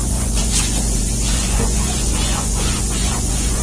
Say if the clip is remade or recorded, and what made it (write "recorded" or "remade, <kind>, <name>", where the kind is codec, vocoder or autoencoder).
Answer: remade, vocoder, Vocos